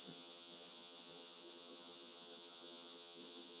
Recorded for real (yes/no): no